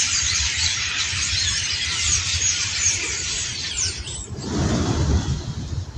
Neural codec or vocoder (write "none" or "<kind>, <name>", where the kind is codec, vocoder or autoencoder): vocoder, BigVGAN v2